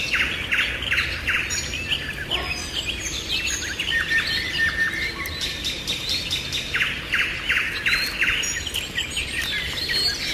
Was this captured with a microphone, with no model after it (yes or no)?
yes